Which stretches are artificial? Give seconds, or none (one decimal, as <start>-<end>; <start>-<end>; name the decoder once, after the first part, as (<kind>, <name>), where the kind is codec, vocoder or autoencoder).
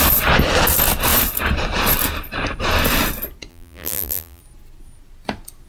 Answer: 3.5-4.4 (vocoder, BigVGAN v2)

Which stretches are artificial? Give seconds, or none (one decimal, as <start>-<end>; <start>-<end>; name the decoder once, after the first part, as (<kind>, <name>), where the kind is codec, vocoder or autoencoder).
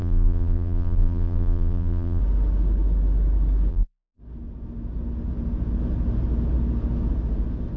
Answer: 0.0-2.2 (vocoder, BigVGAN v2); 3.7-4.2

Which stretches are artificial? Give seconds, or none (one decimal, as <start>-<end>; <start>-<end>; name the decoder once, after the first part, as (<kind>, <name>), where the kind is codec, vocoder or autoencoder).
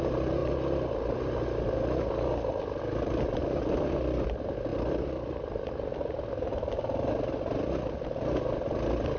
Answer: 4.7-5.3 (vocoder, BigVGAN v2)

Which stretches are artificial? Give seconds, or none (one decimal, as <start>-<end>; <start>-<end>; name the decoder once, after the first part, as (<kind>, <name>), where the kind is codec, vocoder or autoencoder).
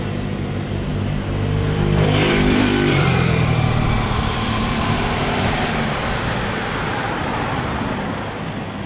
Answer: 0.9-4.8 (vocoder, BigVGAN v2)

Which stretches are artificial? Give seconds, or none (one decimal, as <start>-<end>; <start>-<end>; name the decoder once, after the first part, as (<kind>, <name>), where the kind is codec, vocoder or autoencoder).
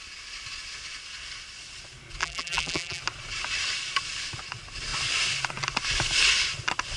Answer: 2.2-3.0 (vocoder, BigVGAN v2)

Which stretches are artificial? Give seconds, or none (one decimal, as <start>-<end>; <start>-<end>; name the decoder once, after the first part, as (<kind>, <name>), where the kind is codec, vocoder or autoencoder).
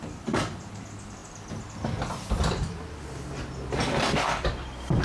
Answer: none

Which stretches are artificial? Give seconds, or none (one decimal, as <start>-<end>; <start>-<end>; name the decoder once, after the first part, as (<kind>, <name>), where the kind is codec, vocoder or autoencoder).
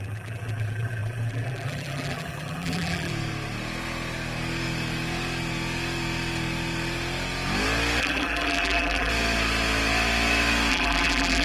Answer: 0.0-3.1 (vocoder, BigVGAN v2); 8.0-9.1; 10.7-11.4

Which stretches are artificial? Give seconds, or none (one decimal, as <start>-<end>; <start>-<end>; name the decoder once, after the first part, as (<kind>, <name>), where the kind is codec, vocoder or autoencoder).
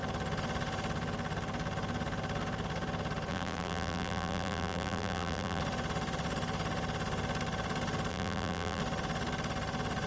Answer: 3.3-5.6 (vocoder, BigVGAN v2); 8.1-8.8